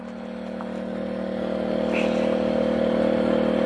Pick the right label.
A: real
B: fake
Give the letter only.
A